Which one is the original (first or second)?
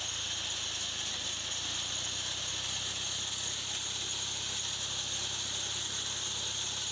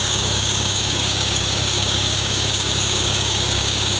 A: first